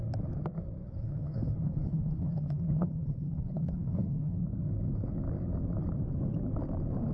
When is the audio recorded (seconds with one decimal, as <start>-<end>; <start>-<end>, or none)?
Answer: 0.0-0.8; 4.4-7.1